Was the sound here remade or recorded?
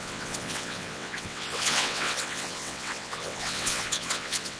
remade